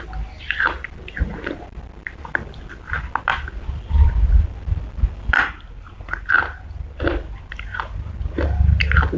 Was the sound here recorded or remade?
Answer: recorded